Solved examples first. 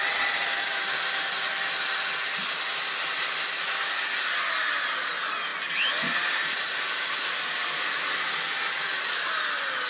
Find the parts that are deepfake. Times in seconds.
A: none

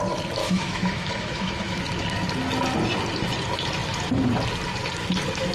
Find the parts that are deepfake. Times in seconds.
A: 0.4-1.8 (autoencoder, DAC-VAE)

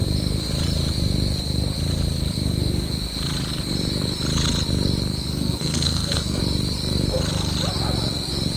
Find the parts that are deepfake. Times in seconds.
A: 5.3-6.4 (codec, SNAC)

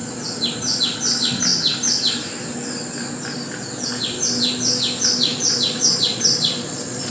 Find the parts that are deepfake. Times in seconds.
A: 5.3-7.1 (vocoder, Vocos)

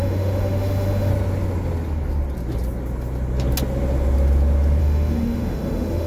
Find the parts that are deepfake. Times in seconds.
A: 0.0-1.1 (autoencoder, DAC-VAE); 4.8-6.1

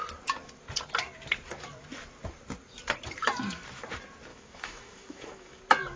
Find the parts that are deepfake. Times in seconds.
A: 4.3-5.6 (autoencoder, DAC-VAE)

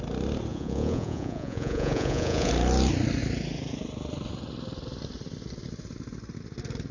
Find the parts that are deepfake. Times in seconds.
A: 0.5-2.5 (vocoder, Vocos)